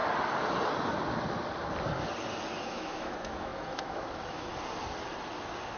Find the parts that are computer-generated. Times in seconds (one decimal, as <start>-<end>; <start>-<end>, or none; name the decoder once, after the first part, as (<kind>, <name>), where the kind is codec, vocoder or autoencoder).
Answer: 2.6-4.5 (autoencoder, DAC-VAE)